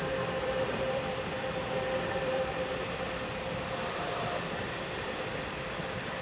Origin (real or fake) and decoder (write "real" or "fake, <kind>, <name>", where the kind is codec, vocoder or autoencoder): fake, vocoder, BigVGAN v2